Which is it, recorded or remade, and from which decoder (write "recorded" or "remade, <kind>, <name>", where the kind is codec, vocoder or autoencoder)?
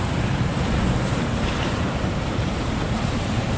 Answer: remade, vocoder, BigVGAN v2